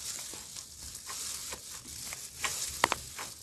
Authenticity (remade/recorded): recorded